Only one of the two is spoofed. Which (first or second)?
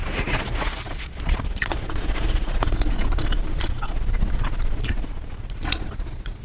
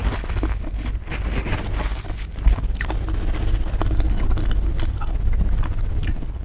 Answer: first